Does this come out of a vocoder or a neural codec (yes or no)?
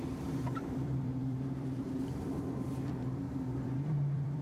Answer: yes